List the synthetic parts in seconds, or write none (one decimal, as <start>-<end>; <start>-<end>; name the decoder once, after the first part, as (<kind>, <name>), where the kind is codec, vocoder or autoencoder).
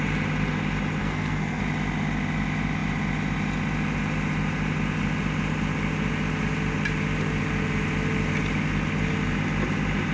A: 1.0-1.6 (codec, SNAC)